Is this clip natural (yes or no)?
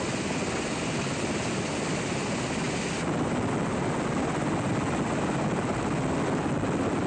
yes